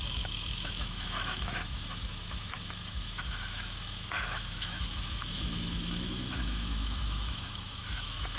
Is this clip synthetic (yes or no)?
yes